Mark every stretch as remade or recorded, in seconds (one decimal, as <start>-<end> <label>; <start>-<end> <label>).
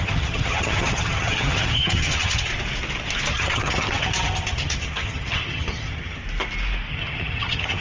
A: 0.0-2.5 remade; 2.5-3.3 recorded; 3.3-6.2 remade; 6.2-6.9 recorded; 6.9-7.8 remade